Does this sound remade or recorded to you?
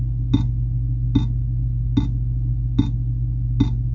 recorded